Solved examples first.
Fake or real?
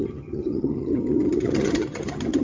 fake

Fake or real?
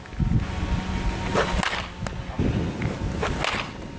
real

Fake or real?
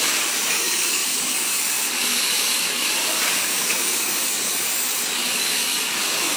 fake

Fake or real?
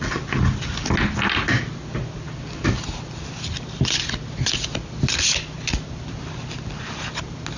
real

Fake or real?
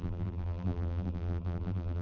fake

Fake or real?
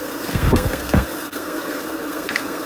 fake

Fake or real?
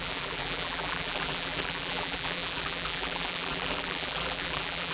fake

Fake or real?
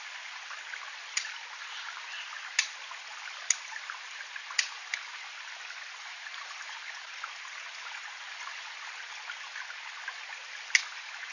real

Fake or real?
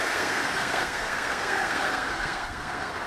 fake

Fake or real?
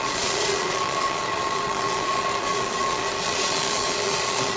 fake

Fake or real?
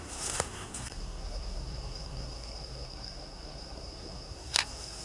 fake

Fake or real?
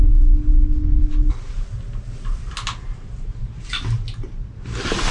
real